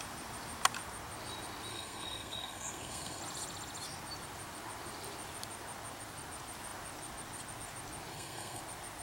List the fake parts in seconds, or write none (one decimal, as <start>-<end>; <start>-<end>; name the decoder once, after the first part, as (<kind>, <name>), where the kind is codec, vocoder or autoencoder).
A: 1.7-3.2 (codec, SNAC); 8.1-8.6